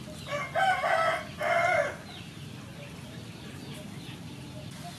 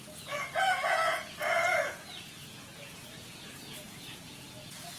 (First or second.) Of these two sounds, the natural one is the first